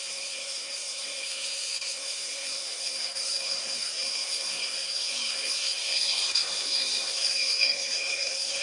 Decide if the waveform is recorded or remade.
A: remade